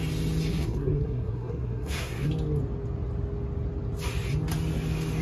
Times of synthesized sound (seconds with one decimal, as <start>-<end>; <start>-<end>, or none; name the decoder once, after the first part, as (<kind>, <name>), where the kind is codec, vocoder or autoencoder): 0.5-2.3 (codec, SNAC)